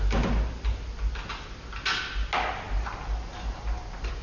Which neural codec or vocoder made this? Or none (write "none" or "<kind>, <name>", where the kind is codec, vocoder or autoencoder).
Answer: none